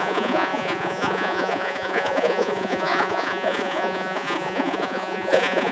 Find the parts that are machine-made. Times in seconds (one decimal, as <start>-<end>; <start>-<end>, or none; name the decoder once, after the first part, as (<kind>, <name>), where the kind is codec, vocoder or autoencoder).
0.0-5.7 (vocoder, Vocos)